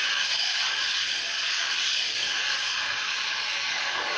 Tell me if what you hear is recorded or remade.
remade